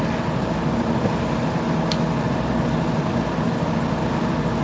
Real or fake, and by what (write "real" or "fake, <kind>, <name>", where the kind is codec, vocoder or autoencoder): real